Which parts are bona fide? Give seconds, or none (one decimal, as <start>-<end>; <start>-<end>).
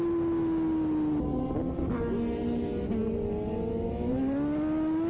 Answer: 0.0-5.1